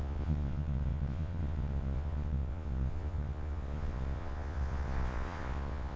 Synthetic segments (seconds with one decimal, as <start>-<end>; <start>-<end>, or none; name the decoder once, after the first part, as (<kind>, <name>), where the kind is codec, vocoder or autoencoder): 0.0-6.0 (vocoder, Vocos)